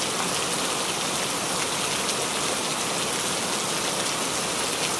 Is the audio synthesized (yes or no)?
no